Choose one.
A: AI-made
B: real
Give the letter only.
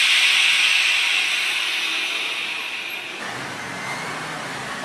B